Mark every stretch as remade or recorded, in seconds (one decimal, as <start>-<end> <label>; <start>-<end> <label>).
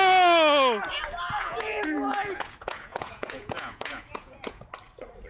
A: 0.0-1.4 recorded; 1.4-4.6 remade; 4.6-5.3 recorded